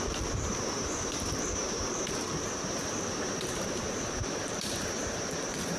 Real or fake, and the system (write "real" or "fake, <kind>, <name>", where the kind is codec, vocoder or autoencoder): fake, vocoder, BigVGAN v2